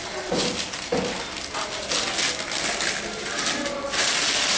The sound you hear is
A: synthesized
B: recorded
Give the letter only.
B